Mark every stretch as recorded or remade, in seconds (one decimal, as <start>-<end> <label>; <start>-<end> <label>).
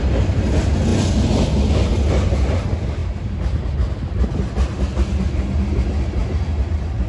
0.0-7.1 recorded